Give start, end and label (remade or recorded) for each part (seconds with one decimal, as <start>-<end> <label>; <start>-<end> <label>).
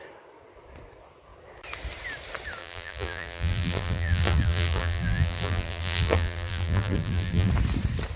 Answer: 0.0-2.6 recorded; 2.6-7.5 remade; 7.5-8.2 recorded